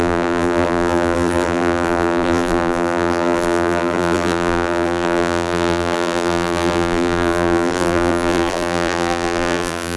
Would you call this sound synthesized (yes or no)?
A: yes